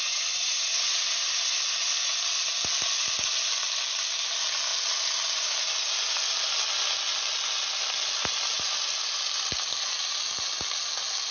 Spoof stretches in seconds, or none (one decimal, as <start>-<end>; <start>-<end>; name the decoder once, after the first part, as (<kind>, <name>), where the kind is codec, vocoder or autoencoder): none

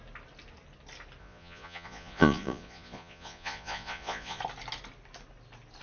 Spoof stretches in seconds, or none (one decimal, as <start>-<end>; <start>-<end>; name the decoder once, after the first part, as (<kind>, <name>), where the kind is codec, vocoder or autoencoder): 1.2-4.4 (vocoder, Vocos)

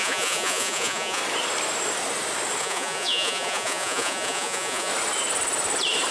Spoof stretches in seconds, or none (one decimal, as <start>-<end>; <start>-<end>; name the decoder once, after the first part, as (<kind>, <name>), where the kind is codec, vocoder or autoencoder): 0.0-1.2 (vocoder, Vocos); 2.6-4.9

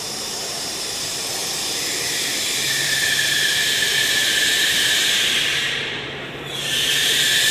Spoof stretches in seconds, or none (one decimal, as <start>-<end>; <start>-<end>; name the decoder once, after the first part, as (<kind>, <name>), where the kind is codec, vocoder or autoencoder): 0.0-1.4 (vocoder, BigVGAN v2); 2.1-7.5

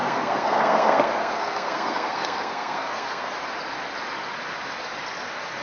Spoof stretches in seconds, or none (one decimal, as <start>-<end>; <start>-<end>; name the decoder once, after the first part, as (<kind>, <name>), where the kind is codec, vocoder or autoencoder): 0.0-3.3 (codec, SNAC)

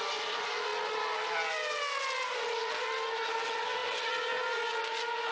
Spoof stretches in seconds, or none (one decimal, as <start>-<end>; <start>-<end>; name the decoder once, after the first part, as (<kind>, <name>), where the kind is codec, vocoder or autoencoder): none

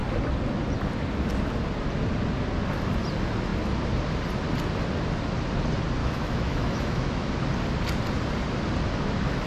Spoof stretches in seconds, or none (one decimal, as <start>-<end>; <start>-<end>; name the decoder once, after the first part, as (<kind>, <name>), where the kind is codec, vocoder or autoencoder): 6.0-7.3 (autoencoder, DAC-VAE)